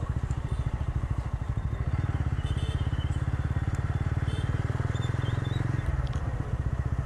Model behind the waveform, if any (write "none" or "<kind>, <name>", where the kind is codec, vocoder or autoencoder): vocoder, BigVGAN v2